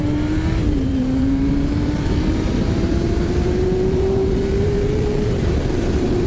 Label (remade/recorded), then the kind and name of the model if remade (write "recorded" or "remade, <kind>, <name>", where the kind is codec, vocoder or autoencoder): remade, vocoder, BigVGAN v2